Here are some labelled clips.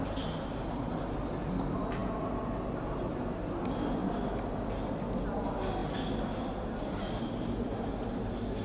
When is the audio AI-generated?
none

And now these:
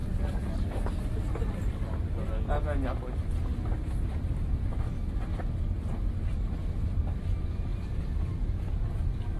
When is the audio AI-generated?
0.0-1.7 (vocoder, BigVGAN v2); 3.5-4.7; 7.7-8.7

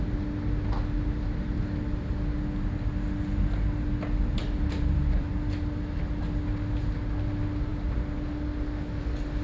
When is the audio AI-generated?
4.4-5.3 (vocoder, BigVGAN v2)